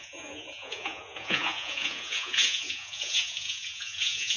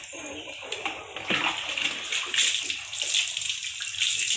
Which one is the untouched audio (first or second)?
second